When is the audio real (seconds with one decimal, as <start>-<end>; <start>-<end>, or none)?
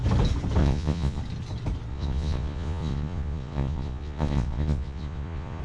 0.0-0.6; 1.2-1.9